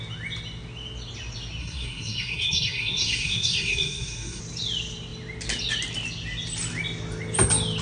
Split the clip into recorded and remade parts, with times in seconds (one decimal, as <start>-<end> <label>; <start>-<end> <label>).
0.0-1.6 recorded; 1.6-4.4 remade; 4.4-7.8 recorded